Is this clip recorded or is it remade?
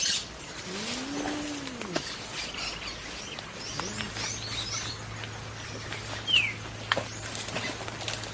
recorded